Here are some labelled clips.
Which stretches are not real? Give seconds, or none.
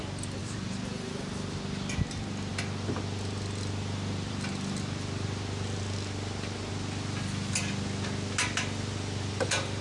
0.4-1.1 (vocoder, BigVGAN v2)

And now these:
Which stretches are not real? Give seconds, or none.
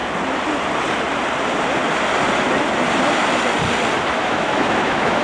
4.2-5.2 (autoencoder, DAC-VAE)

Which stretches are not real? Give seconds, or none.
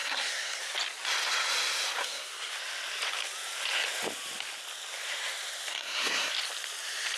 0.0-0.6 (codec, SNAC); 2.0-2.5; 5.7-6.3